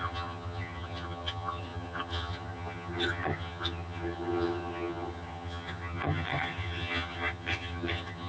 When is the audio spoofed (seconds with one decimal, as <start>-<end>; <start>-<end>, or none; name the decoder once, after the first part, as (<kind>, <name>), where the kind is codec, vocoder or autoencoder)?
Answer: 0.0-8.3 (vocoder, HiFi-GAN)